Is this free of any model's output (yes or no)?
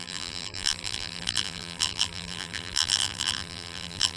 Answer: no